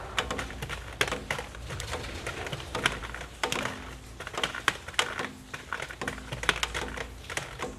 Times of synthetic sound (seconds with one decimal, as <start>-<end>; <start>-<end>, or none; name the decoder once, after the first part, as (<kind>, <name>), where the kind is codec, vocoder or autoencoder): none